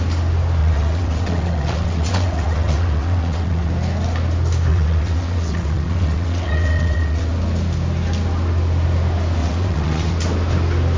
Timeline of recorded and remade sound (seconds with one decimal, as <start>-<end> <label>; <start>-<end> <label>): 0.0-0.6 recorded; 0.6-3.7 remade; 3.7-4.7 recorded; 4.7-7.3 remade; 7.3-9.4 recorded; 9.4-10.1 remade; 10.1-11.0 recorded